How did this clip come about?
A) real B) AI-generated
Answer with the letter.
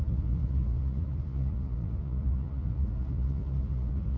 B